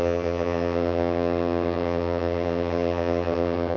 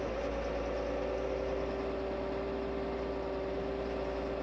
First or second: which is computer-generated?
first